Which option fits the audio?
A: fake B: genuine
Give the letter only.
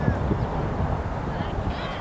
B